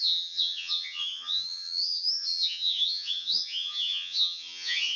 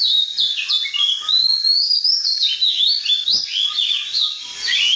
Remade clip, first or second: first